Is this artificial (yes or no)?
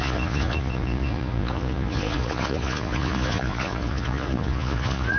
yes